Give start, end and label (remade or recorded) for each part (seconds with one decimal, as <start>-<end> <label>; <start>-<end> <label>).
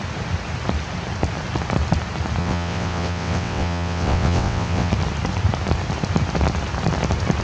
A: 0.0-2.4 recorded; 2.4-4.9 remade; 4.9-7.4 recorded